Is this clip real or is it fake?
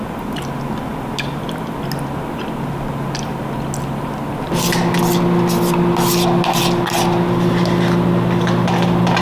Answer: real